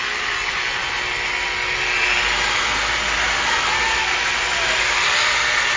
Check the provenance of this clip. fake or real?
real